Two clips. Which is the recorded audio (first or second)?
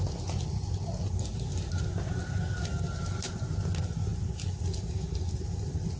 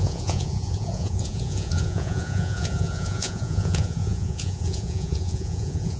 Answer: first